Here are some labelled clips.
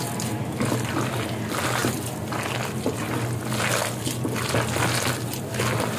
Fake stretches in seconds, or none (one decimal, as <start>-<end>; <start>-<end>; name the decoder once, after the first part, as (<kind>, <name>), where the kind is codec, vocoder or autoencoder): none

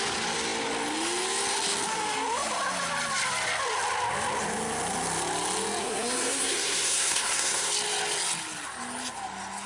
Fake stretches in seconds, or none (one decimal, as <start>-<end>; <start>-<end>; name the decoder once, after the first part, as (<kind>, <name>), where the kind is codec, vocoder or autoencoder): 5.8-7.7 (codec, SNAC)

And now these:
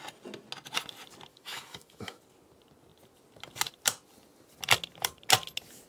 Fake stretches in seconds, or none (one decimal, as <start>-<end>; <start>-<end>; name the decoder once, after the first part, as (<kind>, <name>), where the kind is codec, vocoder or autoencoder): 1.3-2.2 (autoencoder, DAC-VAE)